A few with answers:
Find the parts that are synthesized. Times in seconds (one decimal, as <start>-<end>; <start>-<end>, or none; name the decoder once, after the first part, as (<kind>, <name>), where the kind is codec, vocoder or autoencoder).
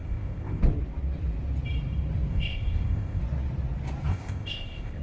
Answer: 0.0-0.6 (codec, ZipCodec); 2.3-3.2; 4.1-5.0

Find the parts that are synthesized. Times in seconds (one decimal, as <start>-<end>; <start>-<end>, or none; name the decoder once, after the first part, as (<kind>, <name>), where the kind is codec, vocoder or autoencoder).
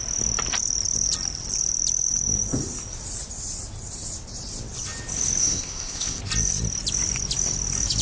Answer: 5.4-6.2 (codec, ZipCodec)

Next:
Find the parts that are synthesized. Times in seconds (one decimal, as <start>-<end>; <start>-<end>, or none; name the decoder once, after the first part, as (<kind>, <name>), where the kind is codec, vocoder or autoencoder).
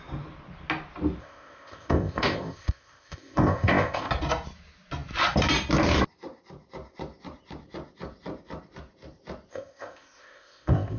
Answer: 1.2-4.1 (codec, ZipCodec); 9.5-11.0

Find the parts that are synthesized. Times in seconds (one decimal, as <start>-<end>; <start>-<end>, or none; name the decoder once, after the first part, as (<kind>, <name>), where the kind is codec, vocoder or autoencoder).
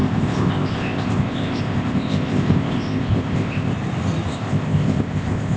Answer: 0.0-3.7 (codec, ZipCodec); 4.3-5.6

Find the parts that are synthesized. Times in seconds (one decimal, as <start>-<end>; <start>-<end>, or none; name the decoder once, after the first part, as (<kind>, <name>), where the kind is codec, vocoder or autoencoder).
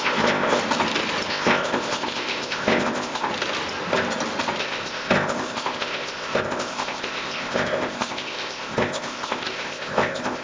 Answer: 0.0-0.6 (codec, ZipCodec); 1.3-3.3; 4.6-10.4